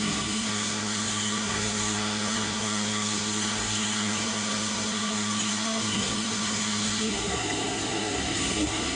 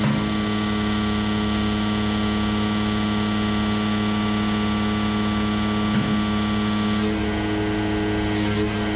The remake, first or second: first